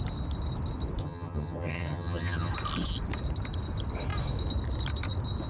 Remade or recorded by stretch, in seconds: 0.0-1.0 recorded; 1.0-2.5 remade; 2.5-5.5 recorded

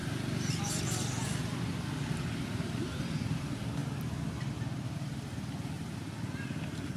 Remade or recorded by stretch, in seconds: 0.0-0.5 recorded; 0.5-7.0 remade

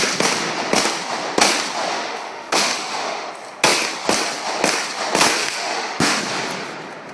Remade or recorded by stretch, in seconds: 0.0-1.9 recorded; 1.9-3.3 remade; 3.3-5.4 recorded; 5.4-6.2 remade; 6.2-7.1 recorded

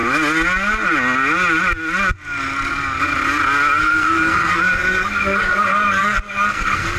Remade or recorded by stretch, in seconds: 0.0-3.8 recorded; 3.8-7.0 remade

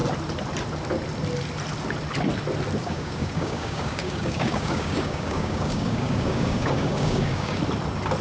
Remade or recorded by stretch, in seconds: 0.0-2.8 recorded; 2.8-7.6 remade; 7.6-8.2 recorded

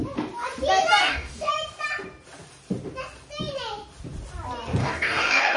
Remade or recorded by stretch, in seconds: 0.0-1.0 recorded; 1.0-1.5 remade; 1.5-4.8 recorded; 4.8-5.6 remade

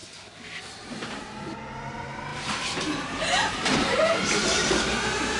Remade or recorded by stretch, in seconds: 0.0-2.3 recorded; 2.3-5.4 remade